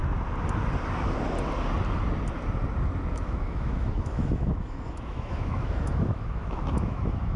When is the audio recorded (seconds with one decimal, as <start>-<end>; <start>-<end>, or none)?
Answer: 0.0-3.1